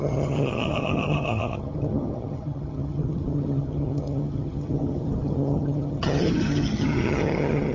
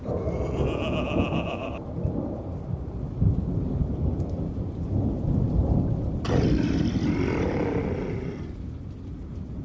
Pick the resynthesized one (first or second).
first